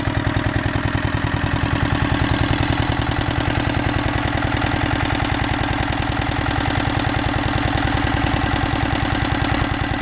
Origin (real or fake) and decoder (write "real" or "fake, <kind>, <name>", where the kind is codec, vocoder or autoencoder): real